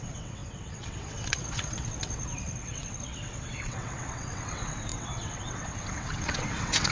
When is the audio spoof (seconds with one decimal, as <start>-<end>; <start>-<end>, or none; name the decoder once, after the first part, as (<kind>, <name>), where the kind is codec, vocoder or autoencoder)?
0.0-6.9 (vocoder, WaveNeXt)